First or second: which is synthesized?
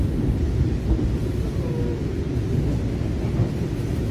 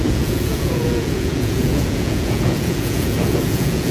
second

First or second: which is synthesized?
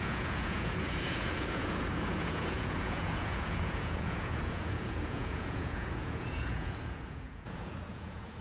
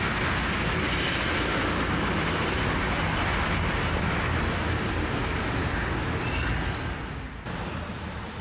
first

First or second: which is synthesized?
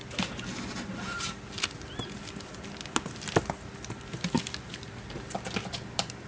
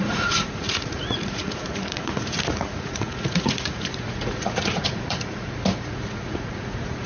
second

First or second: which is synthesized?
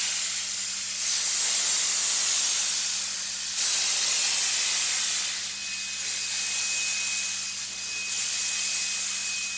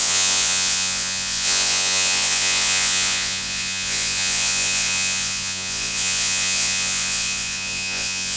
second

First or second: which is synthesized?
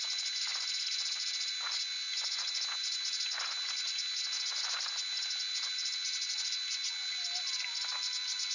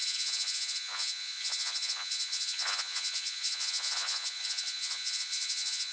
second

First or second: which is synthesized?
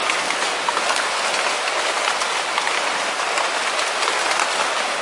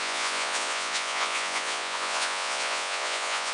second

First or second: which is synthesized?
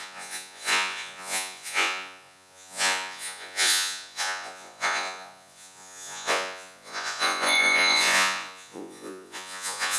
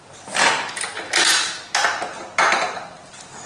first